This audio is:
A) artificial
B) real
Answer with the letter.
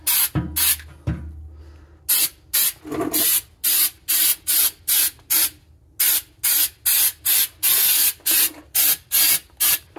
B